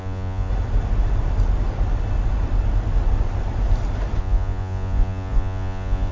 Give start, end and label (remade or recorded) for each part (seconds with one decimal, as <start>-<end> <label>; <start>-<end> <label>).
0.0-0.5 remade; 0.5-4.2 recorded; 4.2-6.1 remade